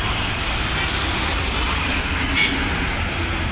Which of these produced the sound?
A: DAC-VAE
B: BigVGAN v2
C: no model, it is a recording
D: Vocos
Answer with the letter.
C